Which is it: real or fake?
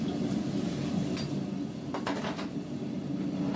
real